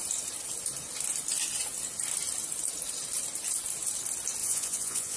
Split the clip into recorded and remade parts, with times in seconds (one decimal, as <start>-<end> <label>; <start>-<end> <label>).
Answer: 0.0-4.4 recorded; 4.4-5.2 remade